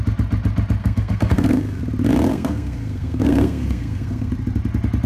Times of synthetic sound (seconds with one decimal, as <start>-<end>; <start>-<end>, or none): 0.8-1.8; 2.3-4.3